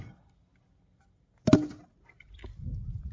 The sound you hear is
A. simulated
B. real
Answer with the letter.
B